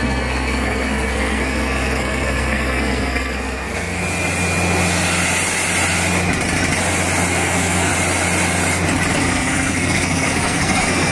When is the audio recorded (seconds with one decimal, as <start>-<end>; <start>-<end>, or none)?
4.0-7.3; 7.9-9.1